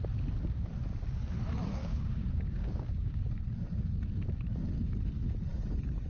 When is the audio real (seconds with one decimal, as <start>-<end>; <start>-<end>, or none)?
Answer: 0.0-1.8; 3.2-6.1